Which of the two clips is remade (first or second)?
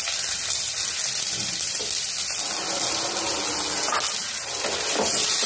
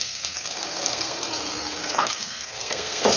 second